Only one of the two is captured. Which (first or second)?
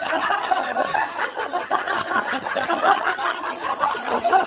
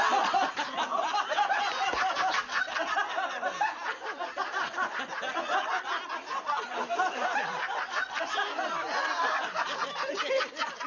second